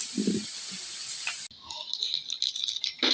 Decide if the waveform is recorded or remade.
recorded